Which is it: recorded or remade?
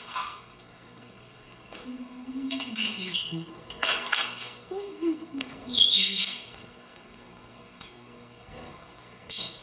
remade